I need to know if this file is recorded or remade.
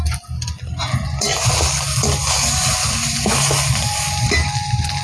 recorded